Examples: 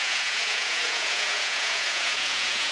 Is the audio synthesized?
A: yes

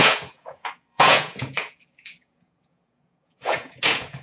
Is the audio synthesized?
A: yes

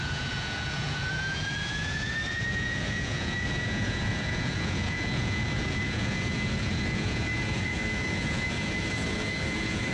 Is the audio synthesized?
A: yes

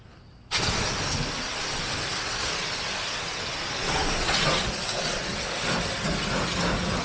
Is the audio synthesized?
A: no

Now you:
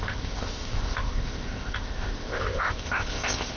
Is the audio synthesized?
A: yes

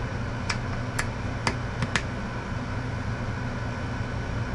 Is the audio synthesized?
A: no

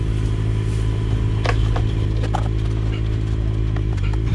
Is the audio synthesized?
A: no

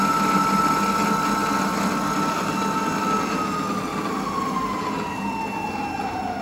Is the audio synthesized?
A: no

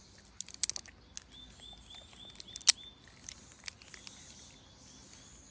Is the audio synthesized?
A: no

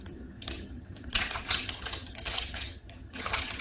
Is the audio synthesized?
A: yes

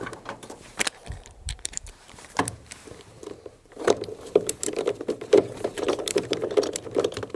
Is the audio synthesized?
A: yes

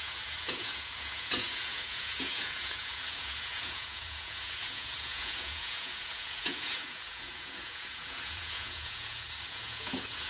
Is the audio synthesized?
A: yes